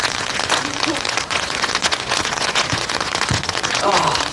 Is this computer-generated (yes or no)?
yes